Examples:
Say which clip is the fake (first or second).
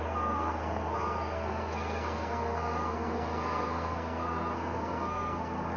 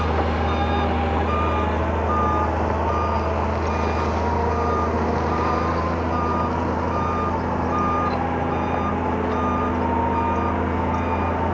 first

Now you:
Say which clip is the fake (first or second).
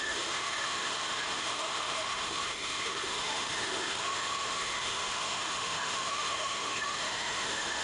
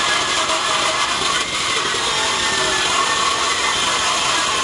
first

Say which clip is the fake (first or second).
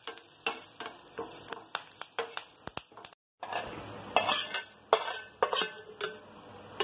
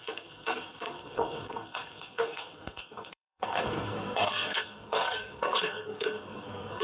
second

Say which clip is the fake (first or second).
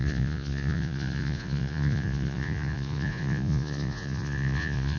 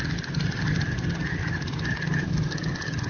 first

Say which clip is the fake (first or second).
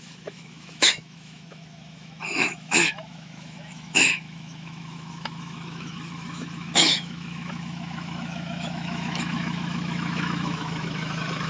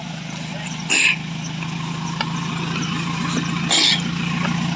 first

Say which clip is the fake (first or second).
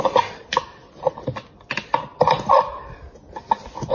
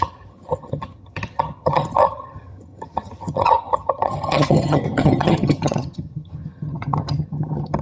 second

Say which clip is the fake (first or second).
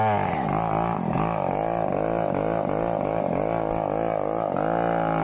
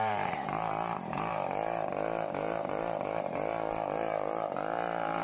second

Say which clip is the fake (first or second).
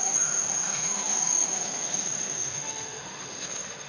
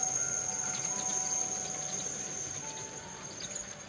first